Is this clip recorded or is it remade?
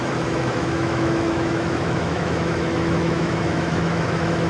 remade